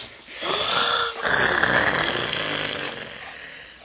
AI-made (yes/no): no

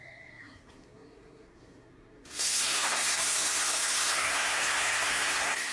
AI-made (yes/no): yes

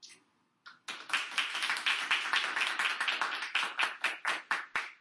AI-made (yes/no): no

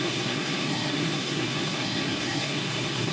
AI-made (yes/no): yes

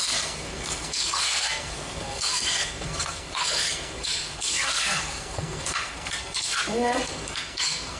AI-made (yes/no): yes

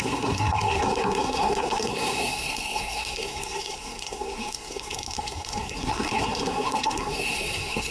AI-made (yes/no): yes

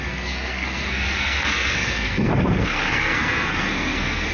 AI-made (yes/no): yes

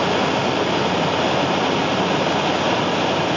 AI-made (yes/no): no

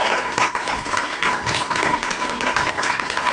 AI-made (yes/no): yes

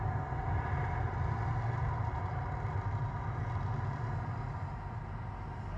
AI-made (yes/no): no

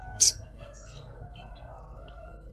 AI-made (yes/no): yes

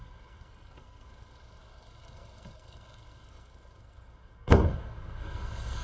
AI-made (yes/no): yes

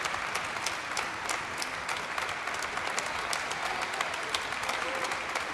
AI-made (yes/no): no